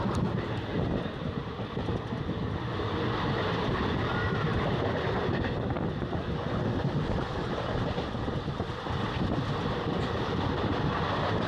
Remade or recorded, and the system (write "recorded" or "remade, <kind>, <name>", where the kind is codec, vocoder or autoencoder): recorded